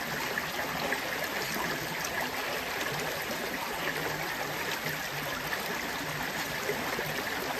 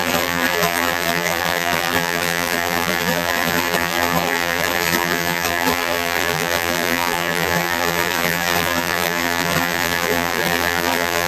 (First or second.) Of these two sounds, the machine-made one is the second